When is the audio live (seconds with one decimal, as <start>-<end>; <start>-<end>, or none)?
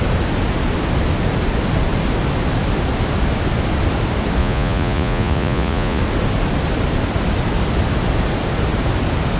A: 0.0-4.4; 6.0-9.4